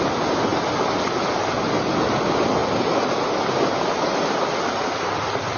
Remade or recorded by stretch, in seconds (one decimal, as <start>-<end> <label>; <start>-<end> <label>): 0.0-5.6 recorded